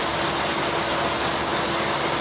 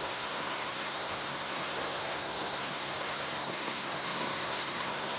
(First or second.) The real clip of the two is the first